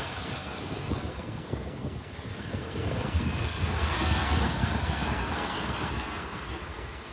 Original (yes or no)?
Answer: no